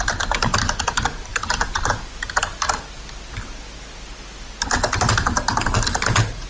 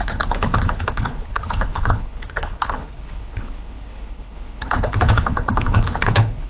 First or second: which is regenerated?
second